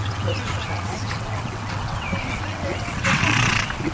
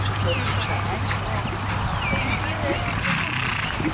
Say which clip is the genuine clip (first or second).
second